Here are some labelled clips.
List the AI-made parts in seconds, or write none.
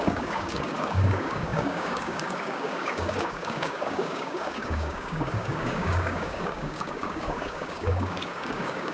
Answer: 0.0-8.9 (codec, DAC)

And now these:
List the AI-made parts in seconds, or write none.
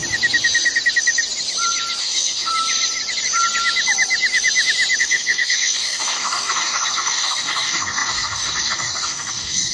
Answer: 2.0-2.5 (codec, DAC); 5.0-9.7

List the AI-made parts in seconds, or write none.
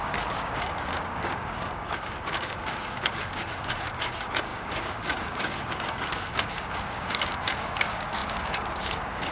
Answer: 0.0-9.3 (codec, DAC)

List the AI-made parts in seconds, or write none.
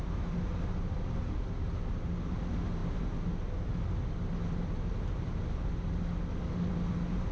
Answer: none